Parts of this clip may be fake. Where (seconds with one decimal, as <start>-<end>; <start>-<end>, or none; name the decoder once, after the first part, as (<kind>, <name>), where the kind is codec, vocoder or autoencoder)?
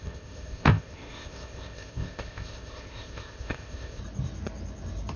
0.0-4.0 (codec, ZipCodec)